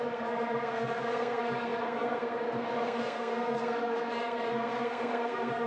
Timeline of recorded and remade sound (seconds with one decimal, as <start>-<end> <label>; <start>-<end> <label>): 0.0-5.7 remade